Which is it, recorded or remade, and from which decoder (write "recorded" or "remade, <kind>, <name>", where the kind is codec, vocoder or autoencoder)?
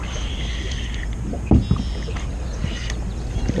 recorded